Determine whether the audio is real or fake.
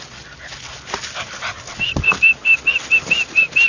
real